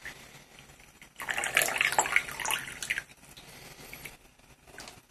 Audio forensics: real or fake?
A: real